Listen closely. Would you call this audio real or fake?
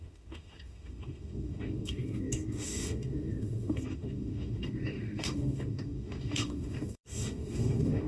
fake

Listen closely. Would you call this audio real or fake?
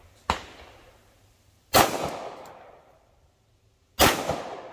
real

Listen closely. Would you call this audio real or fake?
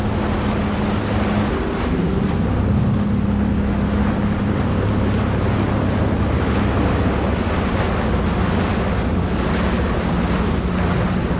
real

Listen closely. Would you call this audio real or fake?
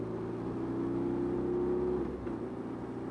real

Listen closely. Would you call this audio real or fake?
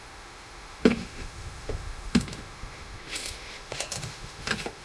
fake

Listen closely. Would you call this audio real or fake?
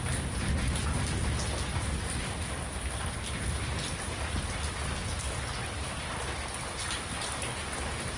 real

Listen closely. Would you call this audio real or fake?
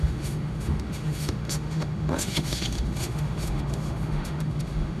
fake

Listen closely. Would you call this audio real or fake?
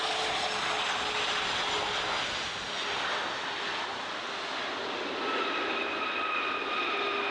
real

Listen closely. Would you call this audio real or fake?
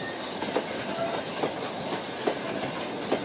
real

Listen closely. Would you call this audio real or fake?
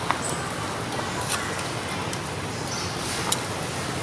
real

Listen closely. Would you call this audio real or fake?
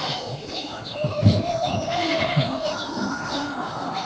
fake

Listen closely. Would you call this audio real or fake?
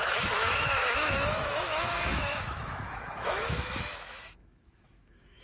fake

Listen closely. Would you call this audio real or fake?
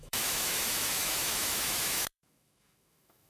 fake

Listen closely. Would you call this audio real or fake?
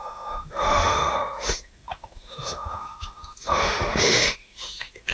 fake